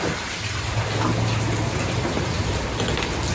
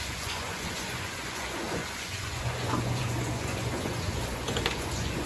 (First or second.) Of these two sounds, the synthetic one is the second